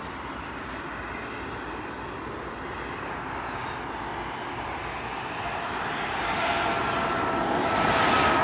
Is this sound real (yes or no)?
yes